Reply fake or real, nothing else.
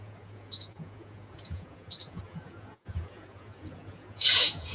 fake